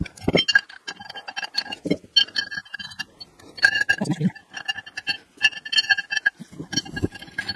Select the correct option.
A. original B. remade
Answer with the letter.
A